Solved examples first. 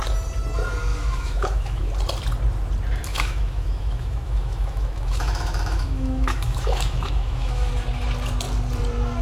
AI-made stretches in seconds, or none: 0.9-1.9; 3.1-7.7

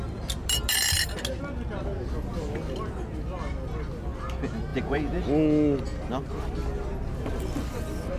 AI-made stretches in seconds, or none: 4.7-5.2

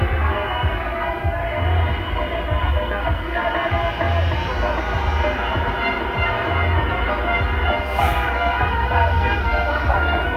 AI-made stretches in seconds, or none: 0.0-1.4; 2.7-3.4; 7.8-10.4

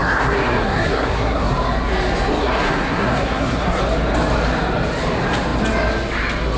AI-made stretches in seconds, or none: 0.0-1.5; 2.4-3.8

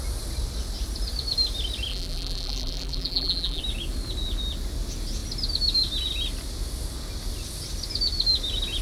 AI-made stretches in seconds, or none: 1.9-3.6